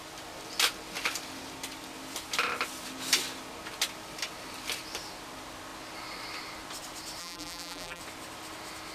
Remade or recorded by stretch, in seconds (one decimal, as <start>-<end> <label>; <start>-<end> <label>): 0.0-7.2 recorded; 7.2-8.0 remade; 8.0-8.9 recorded